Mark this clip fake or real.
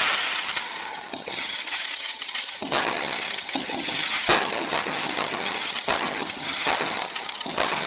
fake